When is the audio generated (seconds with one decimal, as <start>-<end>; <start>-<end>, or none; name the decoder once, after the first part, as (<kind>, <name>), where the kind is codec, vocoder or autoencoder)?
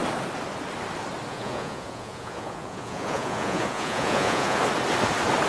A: 1.3-4.6 (vocoder, Vocos)